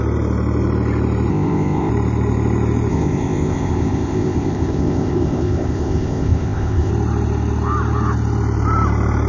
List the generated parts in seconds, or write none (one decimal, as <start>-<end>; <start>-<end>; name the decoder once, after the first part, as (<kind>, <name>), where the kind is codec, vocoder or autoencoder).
1.3-1.9 (codec, ZipCodec); 2.9-6.9